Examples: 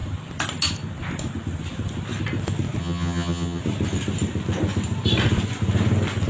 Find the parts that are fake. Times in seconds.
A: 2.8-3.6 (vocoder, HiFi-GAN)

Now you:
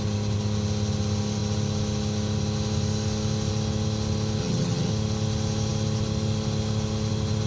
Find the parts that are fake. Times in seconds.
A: 4.4-4.9 (vocoder, HiFi-GAN)

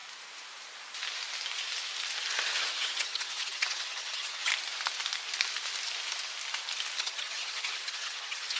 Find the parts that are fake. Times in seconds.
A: 2.5-4.5 (vocoder, HiFi-GAN); 7.0-8.6

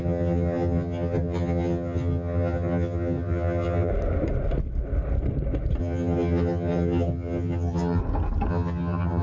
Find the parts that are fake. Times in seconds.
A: 0.0-3.9 (vocoder, HiFi-GAN); 5.8-8.0; 8.5-9.2

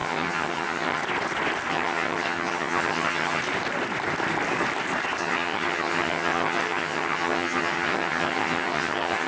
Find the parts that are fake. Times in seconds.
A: 0.0-1.0 (vocoder, HiFi-GAN); 1.7-3.4; 5.2-9.3

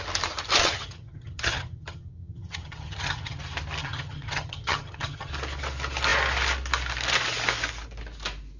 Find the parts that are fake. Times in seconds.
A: 0.6-3.4 (vocoder, HiFi-GAN); 3.8-5.3